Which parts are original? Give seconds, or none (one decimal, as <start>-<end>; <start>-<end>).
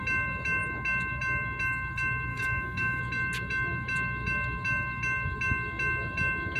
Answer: 0.0-2.3; 3.0-6.6